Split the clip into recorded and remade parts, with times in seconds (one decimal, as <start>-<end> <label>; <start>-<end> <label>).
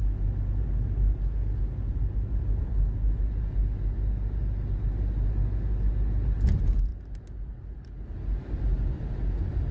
0.0-9.7 recorded